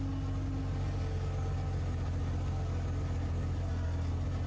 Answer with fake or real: real